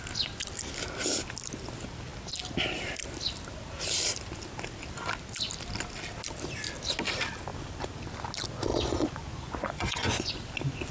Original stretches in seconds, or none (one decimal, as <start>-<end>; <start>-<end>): 0.0-8.7; 10.3-10.9